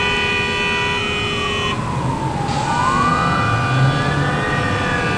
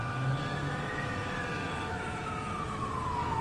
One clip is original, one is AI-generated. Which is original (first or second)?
first